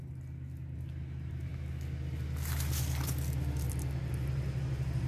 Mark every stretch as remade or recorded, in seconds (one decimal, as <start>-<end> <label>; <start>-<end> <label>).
0.0-5.1 recorded

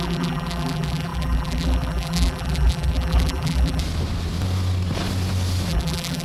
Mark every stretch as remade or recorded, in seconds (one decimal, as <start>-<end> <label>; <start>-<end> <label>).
0.0-3.8 remade; 3.8-5.7 recorded; 5.7-6.2 remade

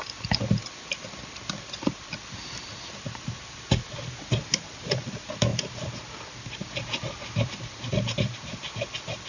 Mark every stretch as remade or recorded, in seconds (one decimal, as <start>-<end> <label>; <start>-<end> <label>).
0.0-2.7 recorded; 2.7-5.0 remade; 5.0-5.5 recorded; 5.5-7.9 remade; 7.9-9.3 recorded

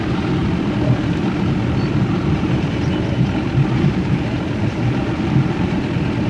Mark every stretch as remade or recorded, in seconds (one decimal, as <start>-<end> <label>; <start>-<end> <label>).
0.0-2.0 recorded; 2.0-5.8 remade; 5.8-6.3 recorded

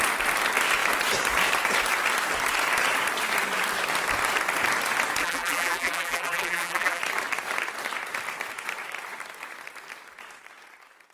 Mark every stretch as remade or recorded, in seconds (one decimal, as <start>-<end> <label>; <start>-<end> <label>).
0.0-5.2 recorded; 5.2-7.0 remade; 7.0-11.1 recorded

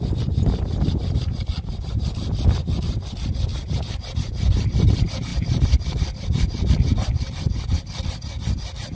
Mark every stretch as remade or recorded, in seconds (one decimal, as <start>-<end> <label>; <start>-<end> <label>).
0.0-5.3 recorded; 5.3-6.7 remade; 6.7-8.9 recorded